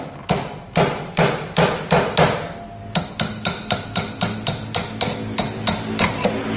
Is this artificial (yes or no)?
no